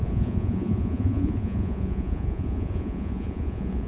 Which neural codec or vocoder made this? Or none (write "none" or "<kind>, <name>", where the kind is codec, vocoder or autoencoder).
vocoder, Vocos